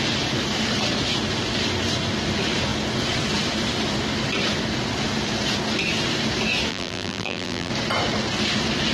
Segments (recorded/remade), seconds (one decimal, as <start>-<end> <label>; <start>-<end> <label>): 0.0-6.7 recorded; 6.7-7.7 remade; 7.7-8.9 recorded